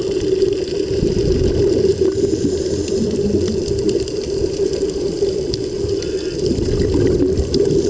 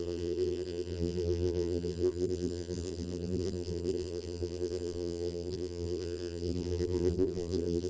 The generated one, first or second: second